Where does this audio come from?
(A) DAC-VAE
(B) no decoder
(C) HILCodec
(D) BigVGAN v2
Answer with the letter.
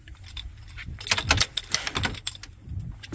B